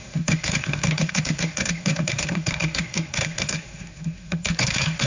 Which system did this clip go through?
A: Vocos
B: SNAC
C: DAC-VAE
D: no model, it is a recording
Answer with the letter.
B